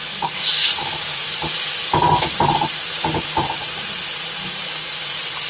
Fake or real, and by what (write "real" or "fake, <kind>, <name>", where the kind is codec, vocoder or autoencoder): fake, vocoder, BigVGAN v2